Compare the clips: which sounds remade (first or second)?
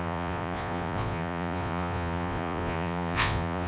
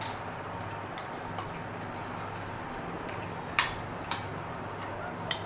first